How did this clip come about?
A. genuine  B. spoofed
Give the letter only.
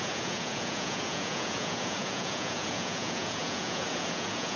B